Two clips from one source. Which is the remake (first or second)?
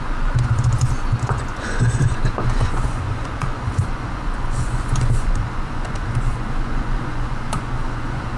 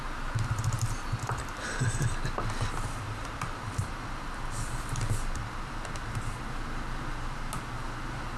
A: first